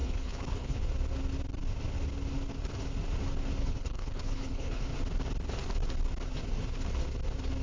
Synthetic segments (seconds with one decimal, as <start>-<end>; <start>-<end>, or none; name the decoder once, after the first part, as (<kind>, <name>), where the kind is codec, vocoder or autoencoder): 0.0-0.8 (codec, HILCodec); 3.6-4.8